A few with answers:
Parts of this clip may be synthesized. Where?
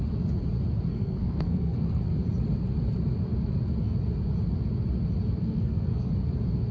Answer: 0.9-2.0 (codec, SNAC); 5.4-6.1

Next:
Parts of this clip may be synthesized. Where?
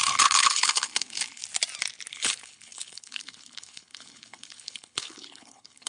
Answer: 0.0-1.4 (codec, HILCodec); 2.1-5.9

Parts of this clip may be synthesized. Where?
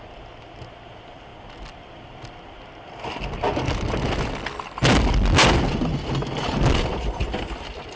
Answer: none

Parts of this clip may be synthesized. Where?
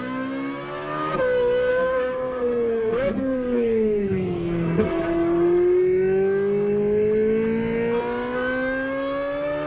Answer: 1.7-5.0 (codec, SNAC)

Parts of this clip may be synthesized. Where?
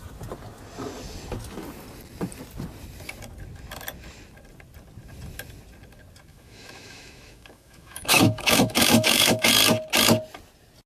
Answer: 6.3-9.5 (autoencoder, DAC-VAE)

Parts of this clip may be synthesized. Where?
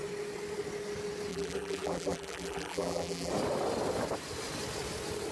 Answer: 1.3-3.3 (vocoder, BigVGAN v2)